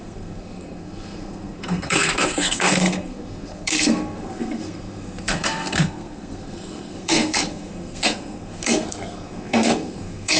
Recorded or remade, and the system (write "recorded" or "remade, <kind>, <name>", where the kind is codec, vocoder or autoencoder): remade, codec, SNAC